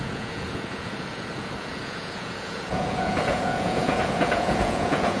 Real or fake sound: fake